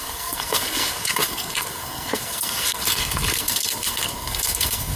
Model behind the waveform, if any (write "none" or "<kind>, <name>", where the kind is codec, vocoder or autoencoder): codec, SNAC